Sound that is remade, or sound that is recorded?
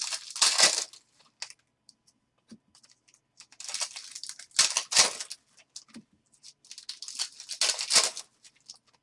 recorded